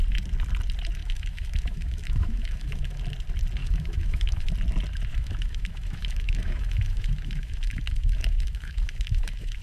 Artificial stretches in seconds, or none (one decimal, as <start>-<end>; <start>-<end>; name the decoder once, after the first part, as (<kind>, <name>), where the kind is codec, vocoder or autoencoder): 1.0-3.0 (autoencoder, DAC-VAE); 3.6-4.5; 5.1-9.6